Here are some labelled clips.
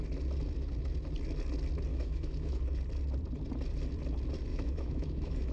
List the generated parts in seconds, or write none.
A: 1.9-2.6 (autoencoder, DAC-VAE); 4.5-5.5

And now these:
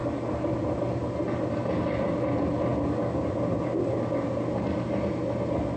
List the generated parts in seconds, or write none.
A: none

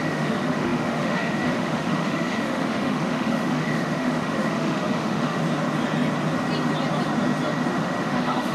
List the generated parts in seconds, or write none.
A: 0.0-5.4 (autoencoder, DAC-VAE); 7.7-8.5

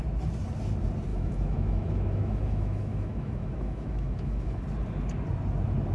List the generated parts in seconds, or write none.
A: 1.1-4.6 (autoencoder, DAC-VAE)

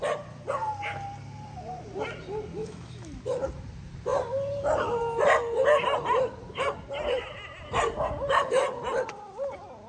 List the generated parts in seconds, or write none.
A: 2.6-3.2 (autoencoder, DAC-VAE)

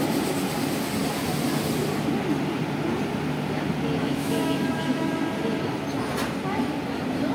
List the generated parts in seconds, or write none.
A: 4.0-5.1 (autoencoder, DAC-VAE)